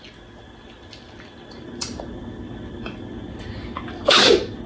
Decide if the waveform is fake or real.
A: real